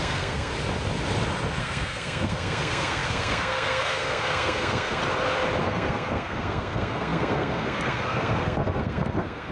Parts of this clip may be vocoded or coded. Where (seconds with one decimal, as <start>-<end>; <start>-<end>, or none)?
0.0-0.5; 1.6-5.0; 5.6-9.5